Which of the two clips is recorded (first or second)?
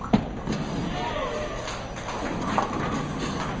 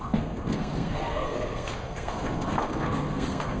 first